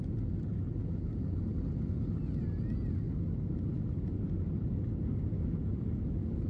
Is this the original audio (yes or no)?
yes